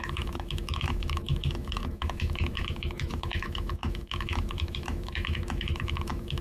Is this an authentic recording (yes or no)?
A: no